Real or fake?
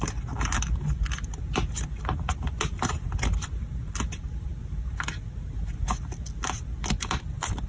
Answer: real